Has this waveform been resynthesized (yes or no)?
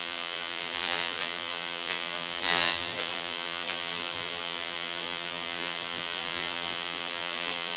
yes